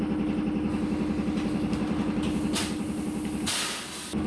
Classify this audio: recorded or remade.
recorded